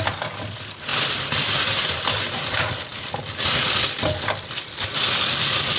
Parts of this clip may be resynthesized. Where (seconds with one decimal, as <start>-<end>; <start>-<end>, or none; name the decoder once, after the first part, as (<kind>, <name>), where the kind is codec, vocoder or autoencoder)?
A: none